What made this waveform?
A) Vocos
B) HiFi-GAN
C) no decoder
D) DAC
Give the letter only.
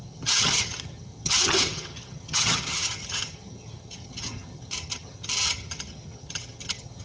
B